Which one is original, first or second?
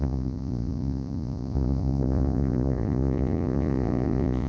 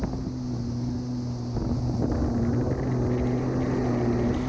second